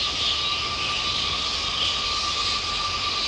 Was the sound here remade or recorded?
recorded